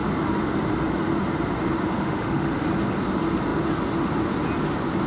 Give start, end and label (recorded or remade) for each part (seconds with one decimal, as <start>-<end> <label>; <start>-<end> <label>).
0.0-1.9 recorded; 1.9-2.7 remade; 2.7-5.1 recorded